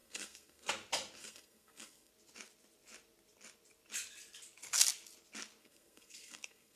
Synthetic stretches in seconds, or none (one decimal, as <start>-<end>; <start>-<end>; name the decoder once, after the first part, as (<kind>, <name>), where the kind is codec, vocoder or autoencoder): 0.0-0.7 (codec, SNAC); 1.2-2.1; 5.6-6.8